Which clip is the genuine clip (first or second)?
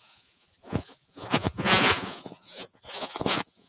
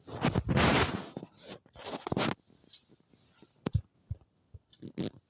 second